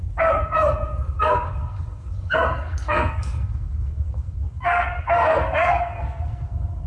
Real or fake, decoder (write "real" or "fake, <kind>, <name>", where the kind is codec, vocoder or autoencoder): fake, codec, SNAC